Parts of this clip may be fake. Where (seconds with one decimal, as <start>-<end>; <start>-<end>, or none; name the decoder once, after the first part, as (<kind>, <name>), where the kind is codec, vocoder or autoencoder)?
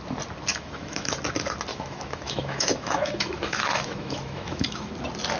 0.5-1.1 (autoencoder, DAC-VAE); 1.7-4.9